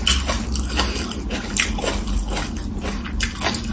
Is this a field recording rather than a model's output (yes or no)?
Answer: yes